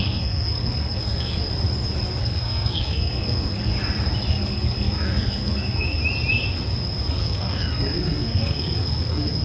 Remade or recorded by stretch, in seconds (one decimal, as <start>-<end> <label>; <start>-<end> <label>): 0.0-1.5 remade; 1.5-2.2 recorded; 2.2-3.7 remade; 3.7-4.3 recorded; 4.3-6.0 remade; 6.0-7.1 recorded; 7.1-9.4 remade